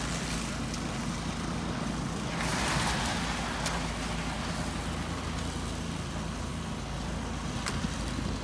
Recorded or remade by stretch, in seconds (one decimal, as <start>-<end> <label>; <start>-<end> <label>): 0.0-8.4 recorded